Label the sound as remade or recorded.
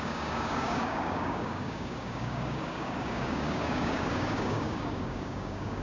remade